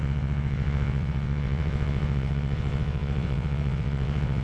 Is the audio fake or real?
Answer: fake